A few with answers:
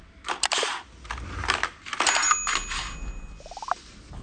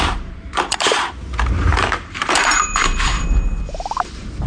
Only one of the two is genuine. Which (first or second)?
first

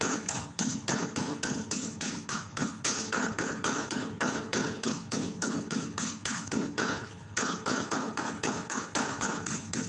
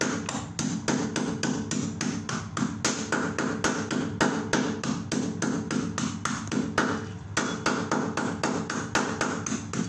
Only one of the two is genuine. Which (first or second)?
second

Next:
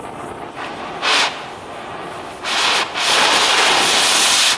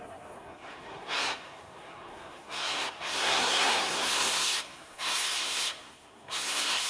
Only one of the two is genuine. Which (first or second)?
first